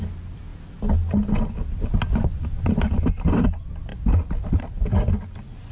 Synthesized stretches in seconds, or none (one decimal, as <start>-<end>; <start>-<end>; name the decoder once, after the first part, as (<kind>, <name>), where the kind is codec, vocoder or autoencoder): none